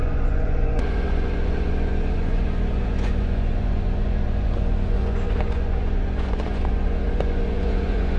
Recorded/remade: remade